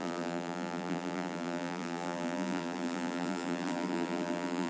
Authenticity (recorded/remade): remade